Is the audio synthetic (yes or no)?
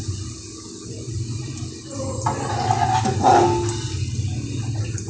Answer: no